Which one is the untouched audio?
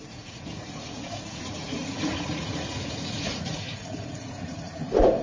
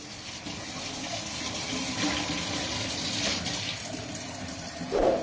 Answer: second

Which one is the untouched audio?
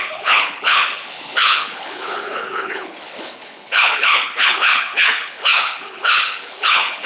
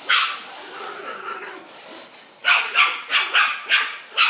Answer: second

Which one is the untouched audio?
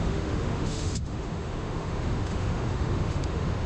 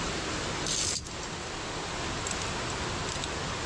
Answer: second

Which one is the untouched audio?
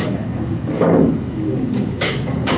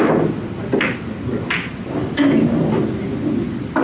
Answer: second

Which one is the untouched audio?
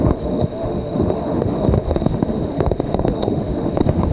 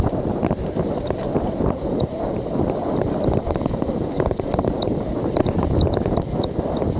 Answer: second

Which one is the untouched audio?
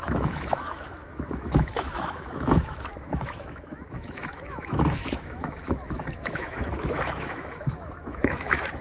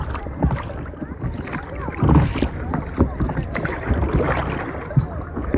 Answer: second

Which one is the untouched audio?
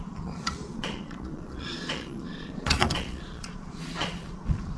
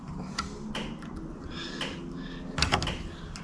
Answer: second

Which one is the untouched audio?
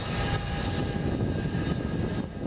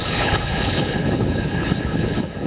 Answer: first